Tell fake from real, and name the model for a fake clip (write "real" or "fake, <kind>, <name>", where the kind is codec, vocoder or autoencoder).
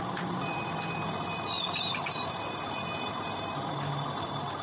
real